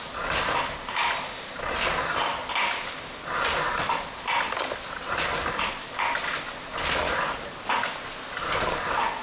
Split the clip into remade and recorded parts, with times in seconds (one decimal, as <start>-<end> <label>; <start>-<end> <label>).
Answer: 0.0-9.2 recorded